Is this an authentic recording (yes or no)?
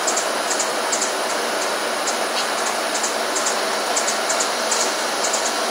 yes